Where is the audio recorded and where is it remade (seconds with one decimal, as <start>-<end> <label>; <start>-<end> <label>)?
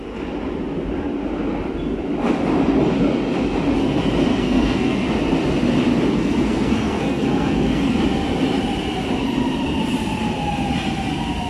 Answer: 0.0-4.3 recorded; 4.3-5.1 remade; 5.1-6.1 recorded; 6.1-8.0 remade; 8.0-11.5 recorded